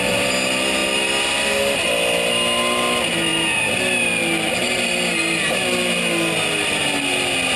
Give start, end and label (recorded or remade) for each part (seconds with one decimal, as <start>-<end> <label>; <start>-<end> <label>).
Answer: 0.0-7.6 recorded